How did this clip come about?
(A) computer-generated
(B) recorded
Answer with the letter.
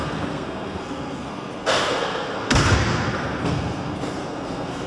A